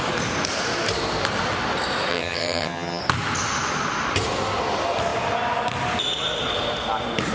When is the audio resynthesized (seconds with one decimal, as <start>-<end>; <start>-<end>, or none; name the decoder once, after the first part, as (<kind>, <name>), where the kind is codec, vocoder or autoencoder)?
2.1-3.0 (vocoder, HiFi-GAN)

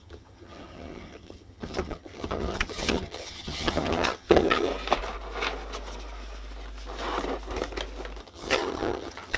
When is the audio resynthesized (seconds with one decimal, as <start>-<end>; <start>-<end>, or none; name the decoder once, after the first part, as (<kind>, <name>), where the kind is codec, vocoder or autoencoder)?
0.0-4.7 (vocoder, HiFi-GAN); 8.2-9.4

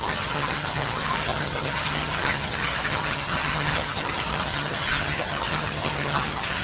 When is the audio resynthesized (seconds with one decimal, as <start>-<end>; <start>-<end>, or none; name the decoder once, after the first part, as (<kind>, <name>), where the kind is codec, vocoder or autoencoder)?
0.0-6.6 (vocoder, HiFi-GAN)

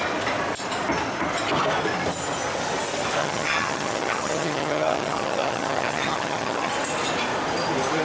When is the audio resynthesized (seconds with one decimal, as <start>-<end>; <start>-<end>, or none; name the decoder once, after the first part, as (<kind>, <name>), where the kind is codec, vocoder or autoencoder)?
3.2-6.7 (vocoder, HiFi-GAN)

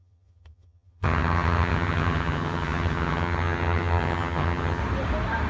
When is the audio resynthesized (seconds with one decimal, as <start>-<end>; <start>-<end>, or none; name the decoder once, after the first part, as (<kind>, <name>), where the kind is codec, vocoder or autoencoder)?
0.0-4.8 (vocoder, HiFi-GAN)

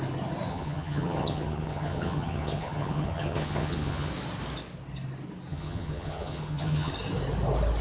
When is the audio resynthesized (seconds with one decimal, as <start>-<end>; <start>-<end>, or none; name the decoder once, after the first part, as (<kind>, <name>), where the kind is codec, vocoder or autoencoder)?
0.5-4.1 (vocoder, HiFi-GAN); 5.5-6.9